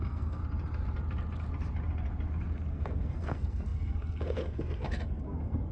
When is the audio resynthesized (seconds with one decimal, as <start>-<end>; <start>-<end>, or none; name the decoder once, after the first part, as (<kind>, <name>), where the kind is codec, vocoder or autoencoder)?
0.0-0.4 (codec, SNAC); 2.7-5.7